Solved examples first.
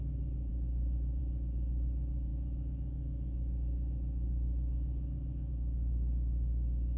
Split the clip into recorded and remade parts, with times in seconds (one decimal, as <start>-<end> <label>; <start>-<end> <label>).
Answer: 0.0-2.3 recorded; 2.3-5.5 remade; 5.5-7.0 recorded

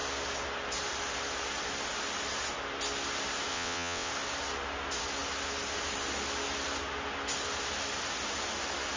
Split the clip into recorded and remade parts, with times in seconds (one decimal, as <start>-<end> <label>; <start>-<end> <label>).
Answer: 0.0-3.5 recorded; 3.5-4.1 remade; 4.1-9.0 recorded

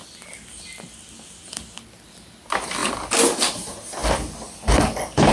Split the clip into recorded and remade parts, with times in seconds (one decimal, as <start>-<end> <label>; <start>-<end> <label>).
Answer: 0.0-5.3 recorded

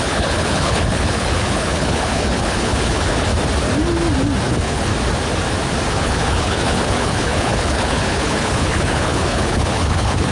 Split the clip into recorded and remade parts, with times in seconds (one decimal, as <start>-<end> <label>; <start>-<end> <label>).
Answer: 0.0-3.3 remade; 3.3-4.5 recorded; 4.5-4.9 remade; 4.9-5.9 recorded; 5.9-10.3 remade

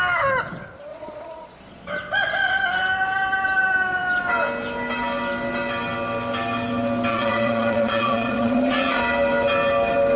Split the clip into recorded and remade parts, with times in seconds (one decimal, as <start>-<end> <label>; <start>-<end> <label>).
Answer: 0.0-0.9 recorded; 0.9-1.9 remade; 1.9-7.1 recorded; 7.1-9.0 remade; 9.0-10.2 recorded

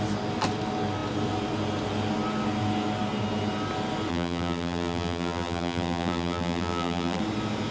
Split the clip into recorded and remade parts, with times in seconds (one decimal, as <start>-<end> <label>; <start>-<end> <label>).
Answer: 0.0-4.1 recorded; 4.1-7.2 remade; 7.2-7.7 recorded

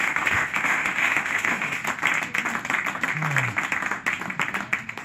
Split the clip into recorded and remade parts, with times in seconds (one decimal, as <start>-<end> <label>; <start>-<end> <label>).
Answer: 0.0-1.8 remade; 1.8-5.0 recorded